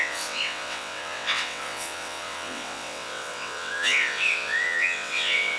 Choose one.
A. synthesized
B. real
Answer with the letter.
A